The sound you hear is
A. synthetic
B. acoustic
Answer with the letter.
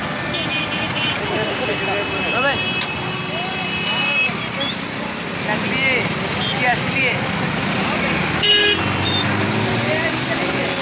B